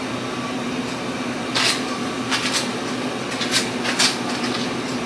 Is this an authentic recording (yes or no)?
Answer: yes